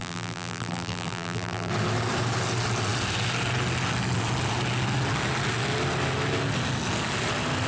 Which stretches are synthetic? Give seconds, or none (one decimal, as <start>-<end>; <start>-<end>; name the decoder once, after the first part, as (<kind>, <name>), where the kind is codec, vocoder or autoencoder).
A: 0.0-1.7 (vocoder, BigVGAN v2)